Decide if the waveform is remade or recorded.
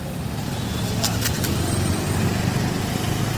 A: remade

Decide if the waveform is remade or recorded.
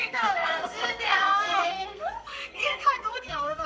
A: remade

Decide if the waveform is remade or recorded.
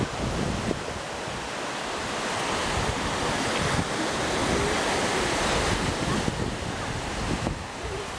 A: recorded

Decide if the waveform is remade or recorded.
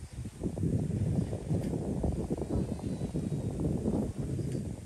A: recorded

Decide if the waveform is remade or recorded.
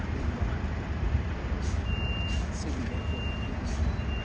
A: remade